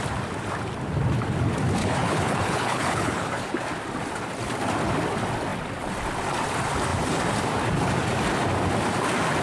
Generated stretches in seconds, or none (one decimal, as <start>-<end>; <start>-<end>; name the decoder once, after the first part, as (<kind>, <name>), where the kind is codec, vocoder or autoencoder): 1.8-3.6 (codec, HILCodec)